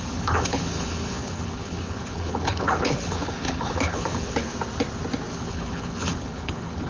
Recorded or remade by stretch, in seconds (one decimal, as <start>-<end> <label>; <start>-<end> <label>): 0.0-4.5 remade; 4.5-5.3 recorded; 5.3-6.9 remade